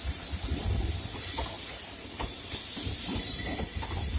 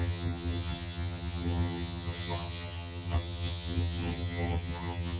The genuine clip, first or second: first